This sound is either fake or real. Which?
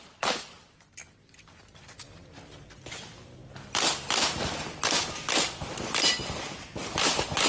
real